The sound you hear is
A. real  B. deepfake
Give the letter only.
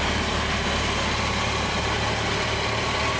A